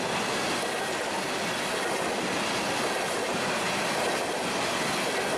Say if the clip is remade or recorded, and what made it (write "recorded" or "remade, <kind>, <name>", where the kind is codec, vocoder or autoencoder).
recorded